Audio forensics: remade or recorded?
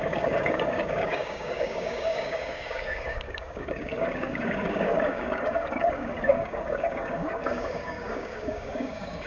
remade